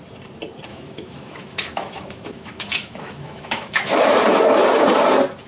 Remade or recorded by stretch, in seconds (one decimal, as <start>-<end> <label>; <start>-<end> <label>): 0.0-0.7 recorded; 0.7-4.0 remade; 4.0-5.5 recorded